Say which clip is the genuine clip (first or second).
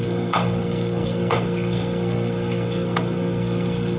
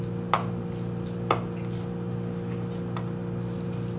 second